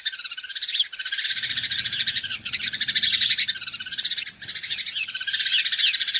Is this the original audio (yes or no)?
yes